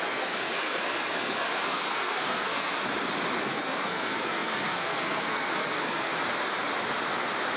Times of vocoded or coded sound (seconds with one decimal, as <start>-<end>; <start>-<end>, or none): 0.0-2.7; 3.4-6.1